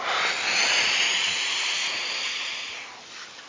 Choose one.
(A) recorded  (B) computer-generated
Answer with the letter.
A